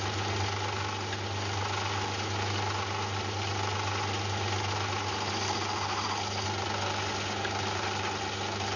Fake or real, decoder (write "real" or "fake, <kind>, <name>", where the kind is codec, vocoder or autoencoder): real